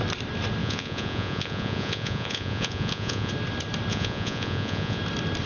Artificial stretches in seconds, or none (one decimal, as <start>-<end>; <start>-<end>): 0.6-3.3; 3.9-5.0